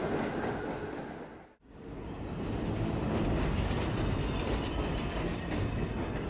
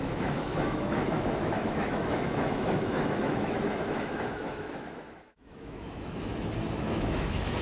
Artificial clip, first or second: second